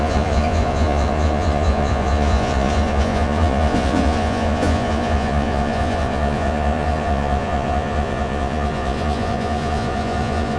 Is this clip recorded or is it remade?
remade